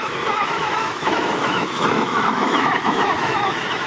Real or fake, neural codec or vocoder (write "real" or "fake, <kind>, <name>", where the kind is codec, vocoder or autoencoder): fake, autoencoder, DAC-VAE